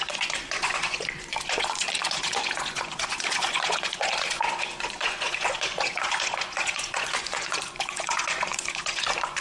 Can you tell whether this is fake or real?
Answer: fake